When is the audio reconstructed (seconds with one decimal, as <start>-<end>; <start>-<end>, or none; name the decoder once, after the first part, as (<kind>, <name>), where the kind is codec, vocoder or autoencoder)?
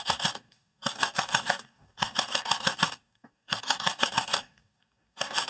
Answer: 0.0-5.5 (codec, DAC)